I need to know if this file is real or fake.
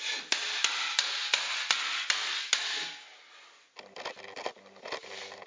real